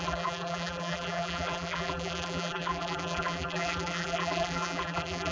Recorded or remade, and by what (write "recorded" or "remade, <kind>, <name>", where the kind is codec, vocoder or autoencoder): remade, vocoder, BigVGAN v2